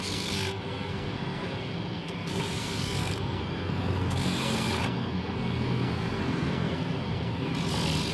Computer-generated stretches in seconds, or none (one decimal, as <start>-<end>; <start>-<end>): 0.0-7.5